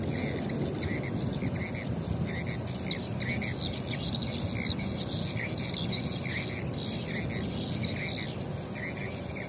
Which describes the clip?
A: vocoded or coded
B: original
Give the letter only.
B